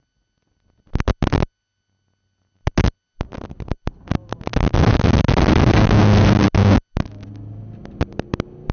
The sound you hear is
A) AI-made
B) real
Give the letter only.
B